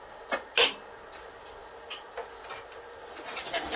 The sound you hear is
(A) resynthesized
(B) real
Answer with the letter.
B